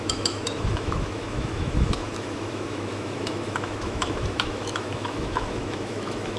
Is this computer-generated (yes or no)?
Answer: yes